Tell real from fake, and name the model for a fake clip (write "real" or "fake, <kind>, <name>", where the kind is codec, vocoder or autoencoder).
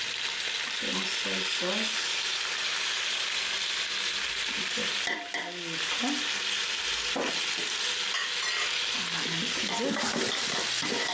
real